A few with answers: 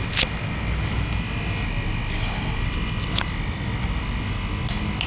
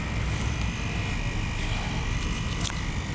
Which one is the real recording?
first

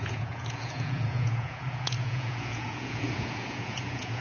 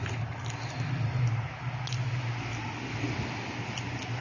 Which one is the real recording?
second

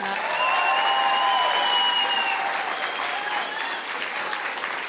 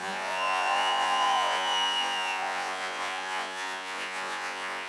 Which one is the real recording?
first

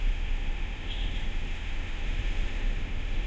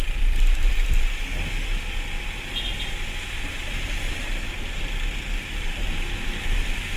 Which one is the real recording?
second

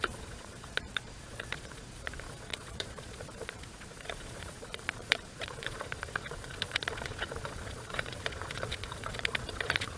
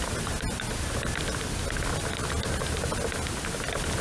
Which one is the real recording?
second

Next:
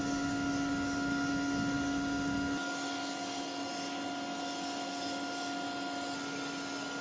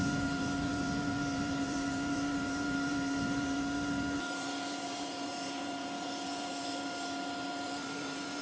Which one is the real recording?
first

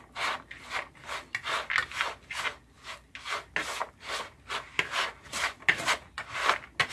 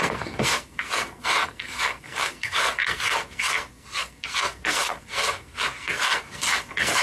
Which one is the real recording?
first